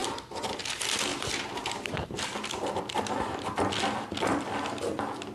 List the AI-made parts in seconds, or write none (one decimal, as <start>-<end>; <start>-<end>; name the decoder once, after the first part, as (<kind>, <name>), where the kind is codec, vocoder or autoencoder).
none